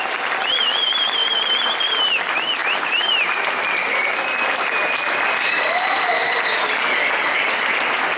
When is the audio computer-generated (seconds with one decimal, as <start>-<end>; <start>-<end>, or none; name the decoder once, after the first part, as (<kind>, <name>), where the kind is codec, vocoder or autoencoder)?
0.0-2.6 (vocoder, BigVGAN v2); 4.6-8.2